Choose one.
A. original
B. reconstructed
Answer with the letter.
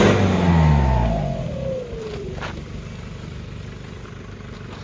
A